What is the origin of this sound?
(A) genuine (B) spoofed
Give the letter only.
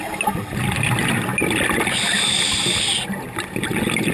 A